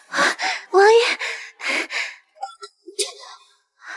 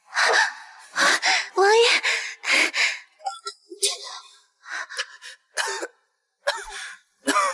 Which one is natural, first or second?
second